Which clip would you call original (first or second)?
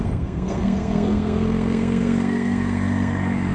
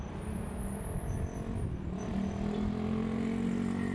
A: second